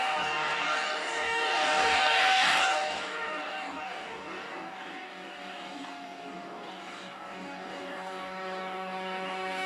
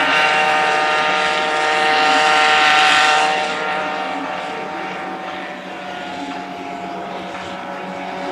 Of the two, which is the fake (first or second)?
first